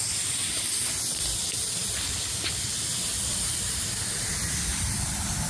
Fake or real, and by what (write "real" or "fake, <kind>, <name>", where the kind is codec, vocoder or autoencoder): fake, vocoder, BigVGAN v2